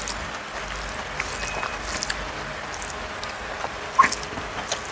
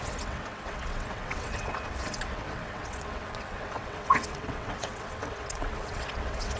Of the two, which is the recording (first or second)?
first